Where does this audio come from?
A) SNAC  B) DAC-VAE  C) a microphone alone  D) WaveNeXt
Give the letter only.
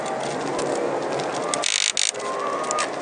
C